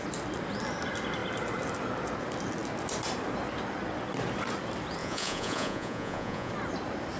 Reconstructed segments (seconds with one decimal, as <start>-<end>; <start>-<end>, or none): 5.0-6.5